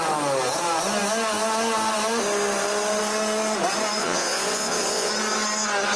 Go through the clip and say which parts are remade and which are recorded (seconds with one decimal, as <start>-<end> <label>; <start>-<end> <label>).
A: 0.0-4.0 recorded; 4.0-5.1 remade; 5.1-6.0 recorded